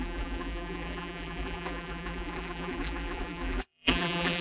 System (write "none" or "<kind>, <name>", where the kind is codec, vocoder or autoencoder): vocoder, BigVGAN v2